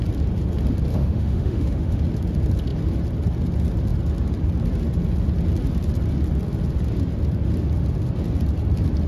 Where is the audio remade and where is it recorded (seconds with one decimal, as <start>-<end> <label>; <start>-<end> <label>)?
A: 0.0-0.9 recorded; 0.9-2.0 remade; 2.0-9.1 recorded